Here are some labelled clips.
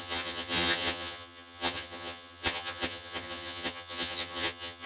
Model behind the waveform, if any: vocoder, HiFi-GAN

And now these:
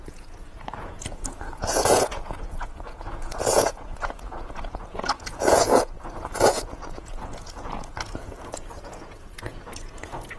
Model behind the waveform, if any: vocoder, Vocos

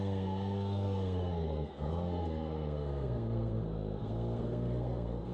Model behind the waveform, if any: codec, SNAC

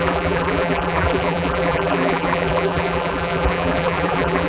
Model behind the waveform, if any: vocoder, BigVGAN v2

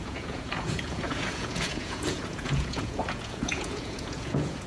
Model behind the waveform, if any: vocoder, Vocos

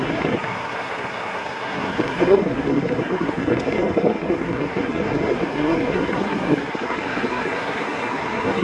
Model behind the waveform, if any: codec, SNAC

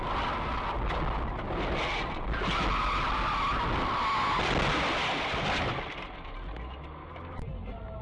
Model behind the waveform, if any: none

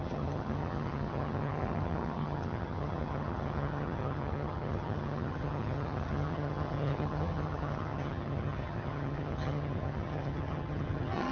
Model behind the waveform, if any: vocoder, HiFi-GAN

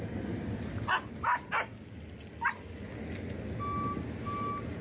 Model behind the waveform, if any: none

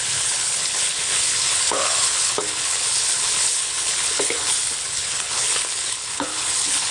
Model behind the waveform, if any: codec, HILCodec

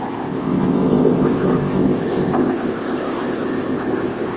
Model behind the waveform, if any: codec, ZipCodec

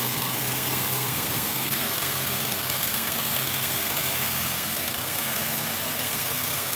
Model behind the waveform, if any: codec, SNAC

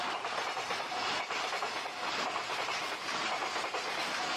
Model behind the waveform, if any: none